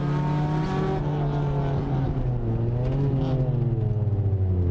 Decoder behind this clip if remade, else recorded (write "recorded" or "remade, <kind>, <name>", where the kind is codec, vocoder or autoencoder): recorded